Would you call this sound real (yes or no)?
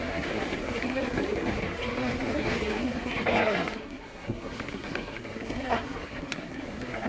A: no